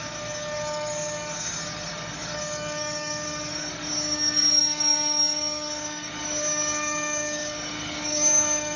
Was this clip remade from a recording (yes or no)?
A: yes